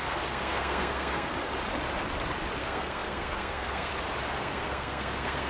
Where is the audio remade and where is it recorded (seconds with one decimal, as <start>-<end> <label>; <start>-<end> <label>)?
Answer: 0.0-1.3 remade; 1.3-2.6 recorded; 2.6-3.9 remade; 3.9-4.4 recorded; 4.4-5.5 remade